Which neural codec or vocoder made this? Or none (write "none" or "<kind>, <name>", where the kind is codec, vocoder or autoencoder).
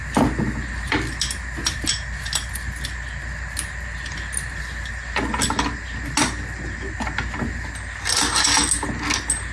none